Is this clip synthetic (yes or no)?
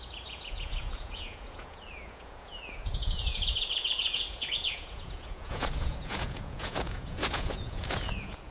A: yes